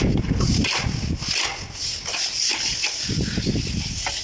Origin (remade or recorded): recorded